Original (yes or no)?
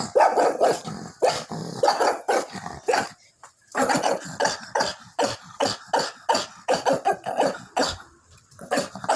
yes